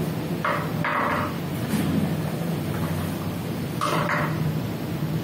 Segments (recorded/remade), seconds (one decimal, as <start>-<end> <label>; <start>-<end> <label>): 0.0-5.2 recorded